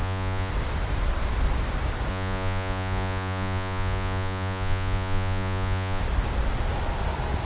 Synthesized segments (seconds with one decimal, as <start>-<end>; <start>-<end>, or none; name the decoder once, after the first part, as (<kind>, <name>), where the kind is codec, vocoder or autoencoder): 0.0-0.5 (vocoder, Vocos); 2.1-6.0